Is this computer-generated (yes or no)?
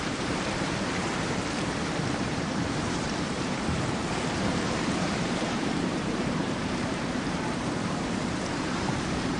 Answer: yes